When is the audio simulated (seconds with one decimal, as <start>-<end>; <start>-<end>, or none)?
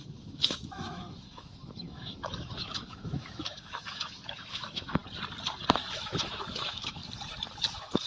0.0-5.0; 6.0-7.0